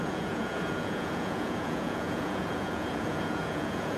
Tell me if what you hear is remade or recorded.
remade